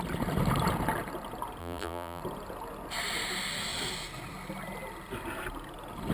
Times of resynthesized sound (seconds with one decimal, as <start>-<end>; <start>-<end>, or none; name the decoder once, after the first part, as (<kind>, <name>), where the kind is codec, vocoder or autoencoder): 1.6-2.2 (vocoder, BigVGAN v2)